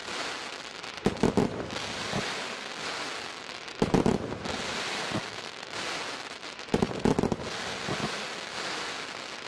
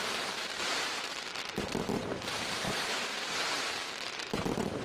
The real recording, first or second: first